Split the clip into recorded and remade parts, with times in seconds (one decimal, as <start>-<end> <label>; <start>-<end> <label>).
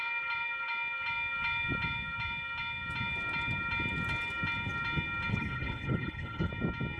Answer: 0.0-5.3 recorded; 5.3-6.5 remade; 6.5-7.0 recorded